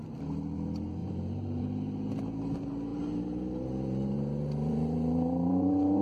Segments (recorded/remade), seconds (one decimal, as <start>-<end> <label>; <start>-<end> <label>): 0.0-1.0 recorded; 1.0-1.6 remade; 1.6-2.9 recorded; 2.9-6.0 remade